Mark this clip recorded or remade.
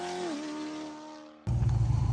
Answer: recorded